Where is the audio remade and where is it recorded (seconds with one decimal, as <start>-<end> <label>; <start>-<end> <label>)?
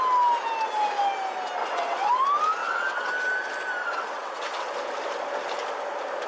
0.0-1.6 recorded; 1.6-2.1 remade; 2.1-2.6 recorded; 2.6-3.1 remade; 3.1-3.8 recorded; 3.8-4.7 remade; 4.7-6.3 recorded